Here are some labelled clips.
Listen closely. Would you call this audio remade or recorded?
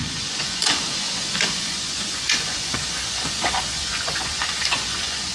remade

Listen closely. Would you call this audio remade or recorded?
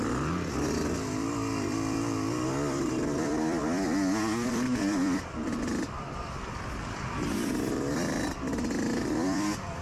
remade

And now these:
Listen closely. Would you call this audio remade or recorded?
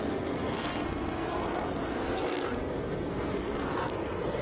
remade